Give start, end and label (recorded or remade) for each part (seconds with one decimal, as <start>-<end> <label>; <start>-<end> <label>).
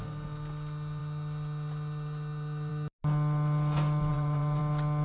0.0-4.1 recorded; 4.1-4.6 remade; 4.6-5.0 recorded